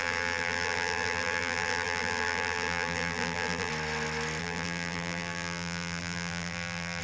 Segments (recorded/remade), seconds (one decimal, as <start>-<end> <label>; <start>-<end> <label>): 0.0-3.7 remade; 3.7-4.4 recorded; 4.4-7.0 remade